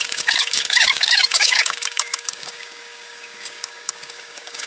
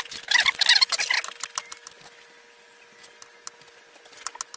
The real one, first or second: second